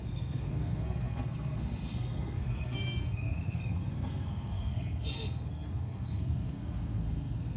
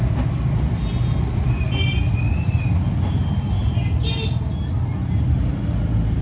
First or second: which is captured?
second